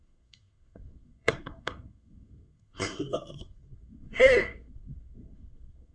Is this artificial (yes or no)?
yes